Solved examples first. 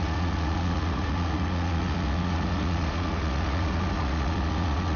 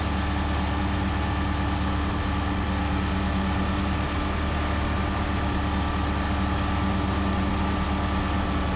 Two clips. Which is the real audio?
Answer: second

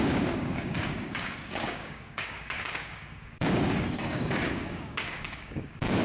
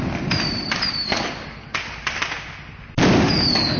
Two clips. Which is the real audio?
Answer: second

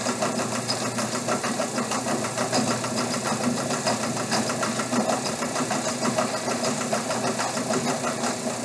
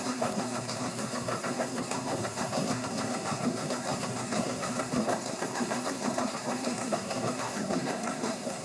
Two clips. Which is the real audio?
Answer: first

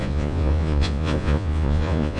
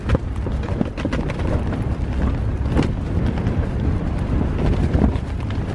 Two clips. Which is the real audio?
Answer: second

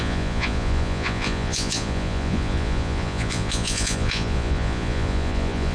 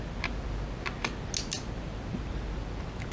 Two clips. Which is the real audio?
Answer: second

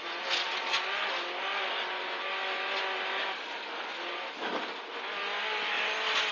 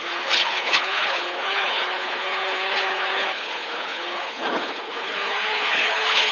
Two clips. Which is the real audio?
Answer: first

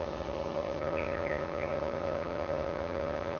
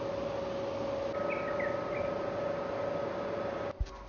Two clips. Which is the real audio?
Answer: second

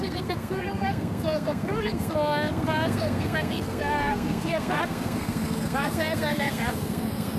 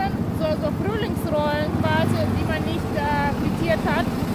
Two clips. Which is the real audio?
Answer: second